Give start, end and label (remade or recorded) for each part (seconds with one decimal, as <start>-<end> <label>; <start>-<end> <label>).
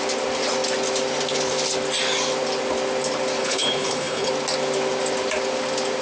0.0-3.4 recorded; 3.4-4.3 remade; 4.3-6.0 recorded